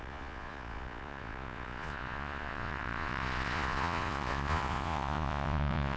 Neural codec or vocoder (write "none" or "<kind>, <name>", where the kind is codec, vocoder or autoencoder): vocoder, Vocos